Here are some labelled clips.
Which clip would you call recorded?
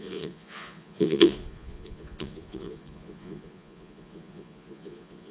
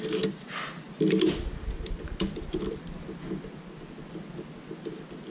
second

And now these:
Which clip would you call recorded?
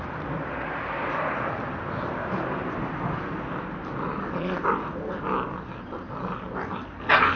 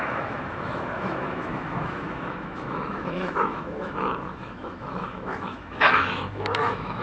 first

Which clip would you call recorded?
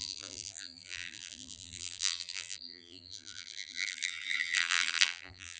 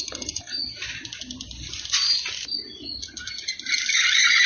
second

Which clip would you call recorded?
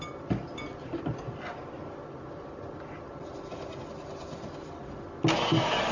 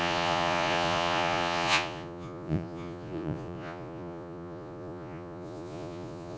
first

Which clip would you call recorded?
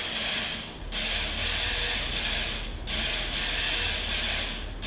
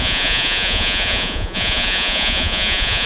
first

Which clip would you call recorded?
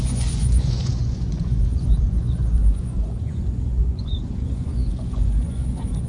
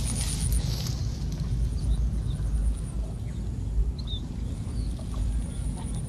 second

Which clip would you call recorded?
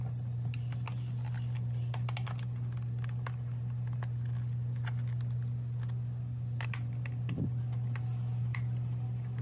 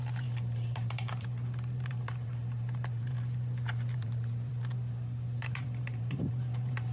first